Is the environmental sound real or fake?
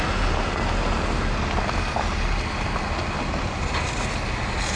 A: real